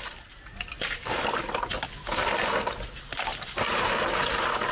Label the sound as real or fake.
real